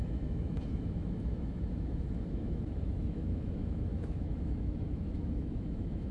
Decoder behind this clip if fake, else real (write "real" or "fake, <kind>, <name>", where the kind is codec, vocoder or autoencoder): fake, autoencoder, DAC-VAE